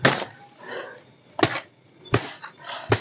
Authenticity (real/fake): real